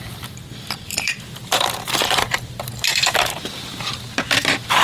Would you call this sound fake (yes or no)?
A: yes